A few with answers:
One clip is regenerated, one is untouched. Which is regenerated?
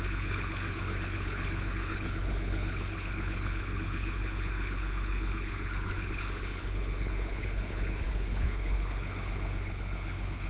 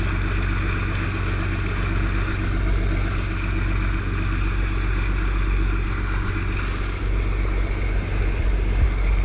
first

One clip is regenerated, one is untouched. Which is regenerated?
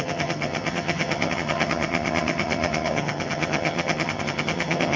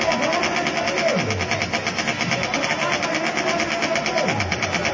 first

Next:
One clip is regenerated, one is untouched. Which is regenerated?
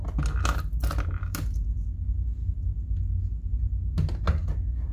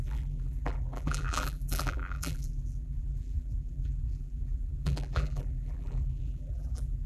second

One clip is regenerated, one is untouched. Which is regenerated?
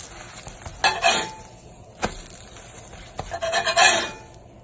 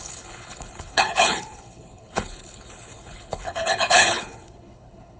second